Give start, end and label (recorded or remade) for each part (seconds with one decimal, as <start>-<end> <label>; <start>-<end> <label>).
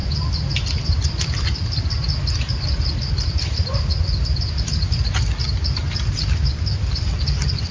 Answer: 0.0-7.7 recorded